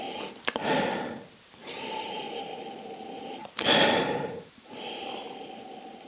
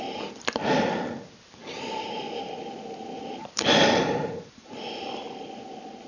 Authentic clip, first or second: second